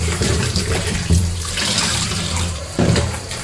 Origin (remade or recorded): remade